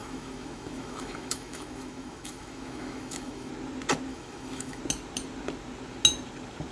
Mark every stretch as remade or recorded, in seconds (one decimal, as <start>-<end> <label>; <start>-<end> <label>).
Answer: 0.0-3.5 remade; 3.5-4.1 recorded; 4.1-4.8 remade; 4.8-6.7 recorded